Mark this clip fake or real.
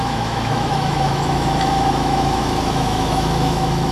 fake